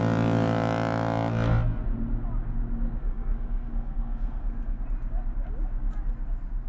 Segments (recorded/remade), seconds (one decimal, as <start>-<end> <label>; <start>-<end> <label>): 0.0-3.0 recorded; 3.0-4.8 remade; 4.8-6.7 recorded